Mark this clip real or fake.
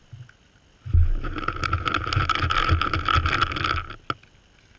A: real